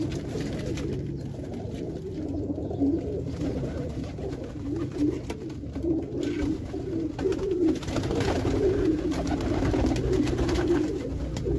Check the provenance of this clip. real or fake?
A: fake